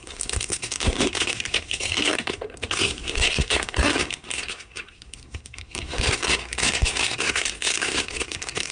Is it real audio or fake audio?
fake